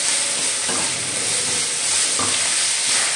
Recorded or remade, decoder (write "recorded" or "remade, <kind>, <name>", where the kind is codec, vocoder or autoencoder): recorded